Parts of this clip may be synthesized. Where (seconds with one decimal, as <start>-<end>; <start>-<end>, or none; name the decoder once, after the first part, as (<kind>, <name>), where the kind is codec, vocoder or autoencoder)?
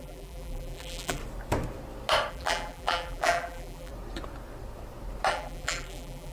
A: 0.0-1.2 (vocoder, BigVGAN v2); 2.3-3.9; 5.3-6.3